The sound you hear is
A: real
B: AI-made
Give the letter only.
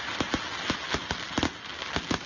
A